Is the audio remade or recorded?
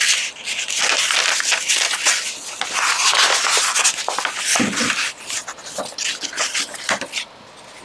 recorded